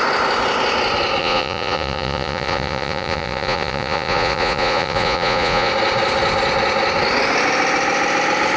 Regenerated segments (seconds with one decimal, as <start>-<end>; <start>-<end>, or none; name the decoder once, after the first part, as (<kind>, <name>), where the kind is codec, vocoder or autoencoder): 1.2-5.7 (vocoder, Vocos)